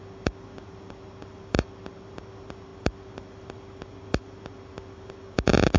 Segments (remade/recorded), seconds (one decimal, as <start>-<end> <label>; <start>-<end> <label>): 0.0-5.8 recorded